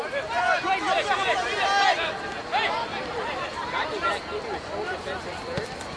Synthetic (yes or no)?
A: no